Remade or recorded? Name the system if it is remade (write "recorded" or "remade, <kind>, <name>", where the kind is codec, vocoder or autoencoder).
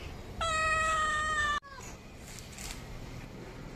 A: recorded